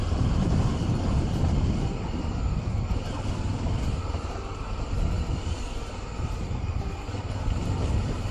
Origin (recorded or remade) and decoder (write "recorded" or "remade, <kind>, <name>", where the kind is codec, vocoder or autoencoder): recorded